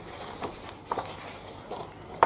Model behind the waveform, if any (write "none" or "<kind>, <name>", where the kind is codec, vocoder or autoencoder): none